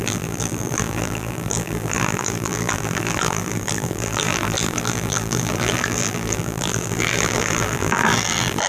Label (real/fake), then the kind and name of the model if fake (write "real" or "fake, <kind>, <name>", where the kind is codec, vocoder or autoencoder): fake, vocoder, BigVGAN v2